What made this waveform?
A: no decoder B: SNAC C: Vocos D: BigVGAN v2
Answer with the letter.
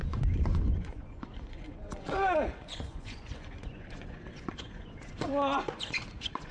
C